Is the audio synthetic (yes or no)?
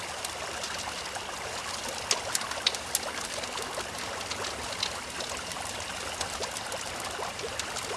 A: no